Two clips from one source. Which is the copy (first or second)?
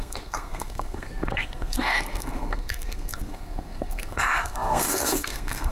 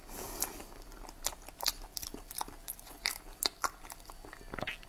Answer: first